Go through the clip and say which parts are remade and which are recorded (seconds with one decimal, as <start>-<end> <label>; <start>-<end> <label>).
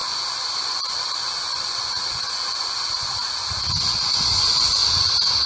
0.0-3.4 remade; 3.4-4.0 recorded; 4.0-4.8 remade; 4.8-5.5 recorded